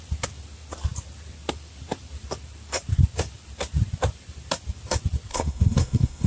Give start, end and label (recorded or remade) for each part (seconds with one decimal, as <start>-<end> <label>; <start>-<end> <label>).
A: 0.0-5.3 recorded; 5.3-6.3 remade